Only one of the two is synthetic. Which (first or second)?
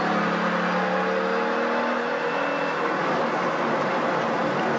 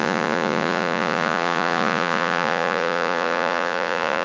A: second